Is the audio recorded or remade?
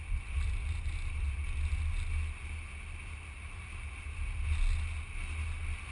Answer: recorded